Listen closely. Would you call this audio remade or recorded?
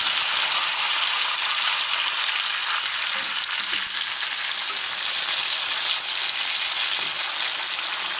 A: recorded